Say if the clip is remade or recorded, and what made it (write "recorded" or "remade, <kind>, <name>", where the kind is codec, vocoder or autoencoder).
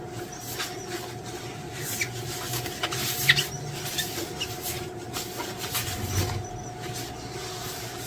recorded